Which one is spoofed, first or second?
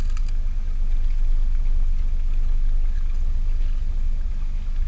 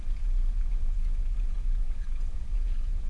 second